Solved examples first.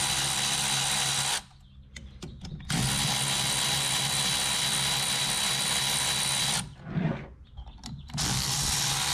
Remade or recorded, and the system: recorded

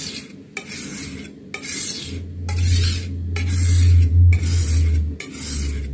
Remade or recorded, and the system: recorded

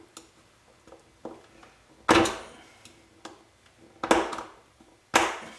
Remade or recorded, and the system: recorded